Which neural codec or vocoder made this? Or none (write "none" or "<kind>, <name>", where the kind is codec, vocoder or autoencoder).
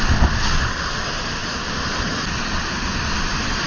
none